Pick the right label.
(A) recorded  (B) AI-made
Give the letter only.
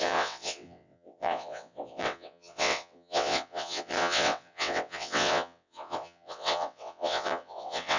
B